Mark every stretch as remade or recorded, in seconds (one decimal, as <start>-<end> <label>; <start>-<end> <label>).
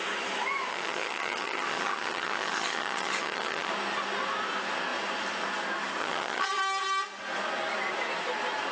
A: 0.0-0.7 recorded; 0.7-3.7 remade; 3.7-6.0 recorded; 6.0-6.5 remade; 6.5-8.7 recorded